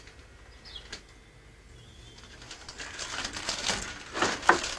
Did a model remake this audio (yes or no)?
no